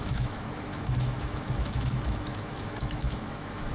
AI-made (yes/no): yes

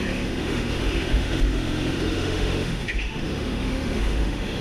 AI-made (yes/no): yes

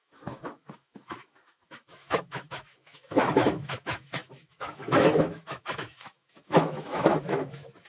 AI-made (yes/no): yes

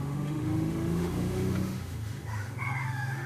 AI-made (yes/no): yes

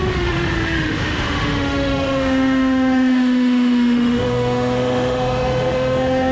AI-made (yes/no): yes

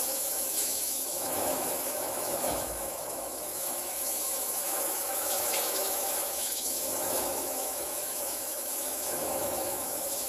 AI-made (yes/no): yes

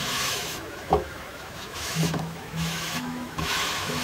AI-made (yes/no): yes